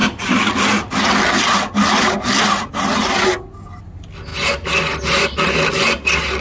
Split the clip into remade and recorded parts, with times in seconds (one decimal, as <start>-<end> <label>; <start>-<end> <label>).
0.0-6.4 recorded